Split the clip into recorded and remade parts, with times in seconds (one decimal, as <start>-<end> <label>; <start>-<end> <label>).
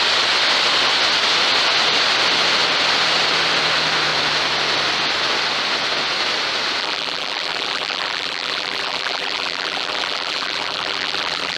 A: 0.0-6.8 recorded; 6.8-11.6 remade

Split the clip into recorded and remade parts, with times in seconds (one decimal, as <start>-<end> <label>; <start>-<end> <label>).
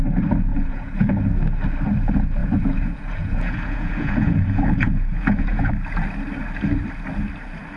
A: 0.0-0.5 recorded; 0.5-1.1 remade; 1.1-2.4 recorded; 2.4-5.7 remade; 5.7-7.8 recorded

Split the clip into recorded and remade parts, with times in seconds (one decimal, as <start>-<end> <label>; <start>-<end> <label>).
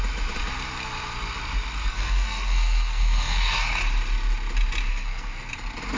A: 0.0-1.9 recorded; 1.9-3.7 remade; 3.7-4.9 recorded; 4.9-5.5 remade; 5.5-6.0 recorded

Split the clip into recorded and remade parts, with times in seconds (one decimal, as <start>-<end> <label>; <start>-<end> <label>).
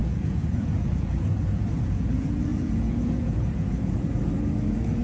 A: 0.0-5.0 remade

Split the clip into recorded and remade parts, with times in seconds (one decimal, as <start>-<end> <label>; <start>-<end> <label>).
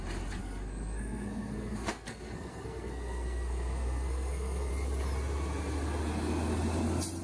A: 0.0-0.4 recorded; 0.4-4.7 remade; 4.7-7.2 recorded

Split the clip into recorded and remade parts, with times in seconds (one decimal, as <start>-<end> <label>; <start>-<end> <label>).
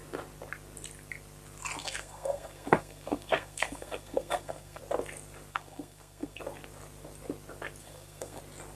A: 0.0-1.8 recorded; 1.8-4.8 remade; 4.8-5.5 recorded; 5.5-6.4 remade; 6.4-7.8 recorded; 7.8-8.4 remade; 8.4-8.8 recorded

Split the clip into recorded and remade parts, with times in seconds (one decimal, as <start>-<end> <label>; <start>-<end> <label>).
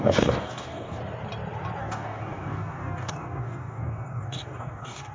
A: 0.0-1.0 remade; 1.0-1.8 recorded; 1.8-5.1 remade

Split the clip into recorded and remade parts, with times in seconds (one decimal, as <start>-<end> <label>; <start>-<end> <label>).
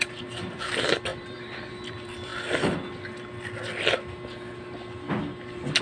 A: 0.0-2.3 remade; 2.3-5.8 recorded